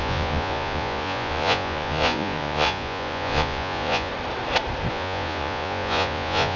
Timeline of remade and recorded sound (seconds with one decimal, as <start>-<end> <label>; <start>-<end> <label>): 0.0-4.1 remade; 4.1-4.9 recorded; 4.9-6.6 remade